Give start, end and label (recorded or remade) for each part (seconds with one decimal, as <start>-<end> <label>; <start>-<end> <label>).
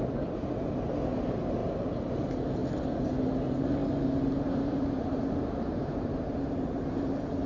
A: 0.0-3.8 recorded; 3.8-5.3 remade; 5.3-5.7 recorded; 5.7-7.5 remade